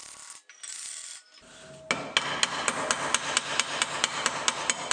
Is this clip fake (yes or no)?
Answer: no